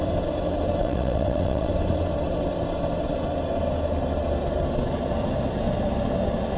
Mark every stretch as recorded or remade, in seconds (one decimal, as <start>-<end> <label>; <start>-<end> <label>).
0.0-0.8 recorded; 0.8-1.7 remade; 1.7-6.6 recorded